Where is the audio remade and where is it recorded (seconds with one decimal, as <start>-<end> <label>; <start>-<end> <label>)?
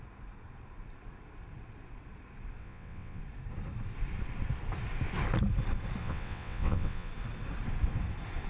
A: 0.0-2.6 recorded; 2.6-3.2 remade; 3.2-6.0 recorded; 6.0-7.1 remade; 7.1-8.5 recorded